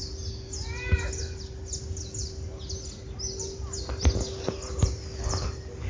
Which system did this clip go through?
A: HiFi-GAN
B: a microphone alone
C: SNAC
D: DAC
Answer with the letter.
B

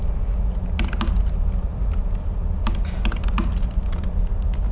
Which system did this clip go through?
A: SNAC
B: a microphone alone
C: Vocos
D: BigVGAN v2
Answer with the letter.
B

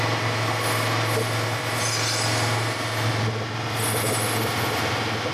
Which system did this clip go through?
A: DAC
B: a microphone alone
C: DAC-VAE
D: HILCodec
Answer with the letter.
B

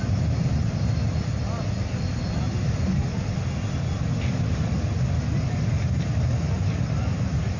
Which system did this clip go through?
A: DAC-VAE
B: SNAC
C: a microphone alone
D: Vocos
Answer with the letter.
C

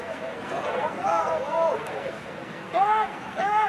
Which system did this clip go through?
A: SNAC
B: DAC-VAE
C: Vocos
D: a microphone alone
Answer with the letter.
A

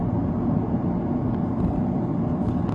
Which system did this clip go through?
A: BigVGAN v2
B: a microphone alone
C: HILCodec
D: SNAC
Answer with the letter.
B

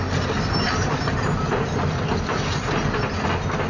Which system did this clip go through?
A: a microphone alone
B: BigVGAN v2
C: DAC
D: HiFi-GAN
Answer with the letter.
A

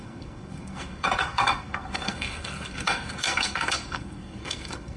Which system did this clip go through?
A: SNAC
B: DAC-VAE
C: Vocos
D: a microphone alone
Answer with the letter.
A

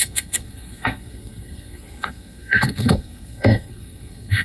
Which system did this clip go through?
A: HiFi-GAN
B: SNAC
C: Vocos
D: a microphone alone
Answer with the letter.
B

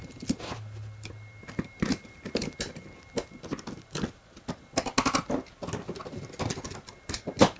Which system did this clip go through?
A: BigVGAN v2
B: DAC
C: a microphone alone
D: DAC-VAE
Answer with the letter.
C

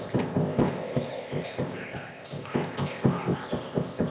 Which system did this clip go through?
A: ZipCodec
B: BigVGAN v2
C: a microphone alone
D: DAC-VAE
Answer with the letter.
A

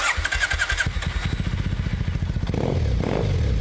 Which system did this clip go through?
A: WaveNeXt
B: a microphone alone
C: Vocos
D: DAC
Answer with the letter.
B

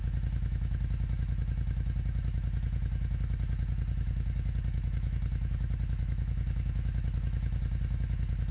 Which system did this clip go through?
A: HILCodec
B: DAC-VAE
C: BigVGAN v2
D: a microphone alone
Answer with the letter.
B